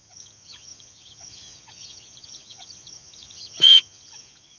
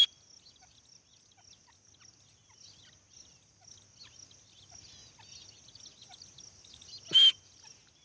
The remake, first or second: first